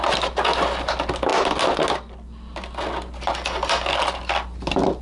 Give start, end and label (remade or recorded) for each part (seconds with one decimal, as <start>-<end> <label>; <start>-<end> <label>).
0.0-5.0 recorded